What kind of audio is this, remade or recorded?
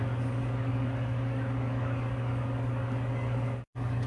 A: remade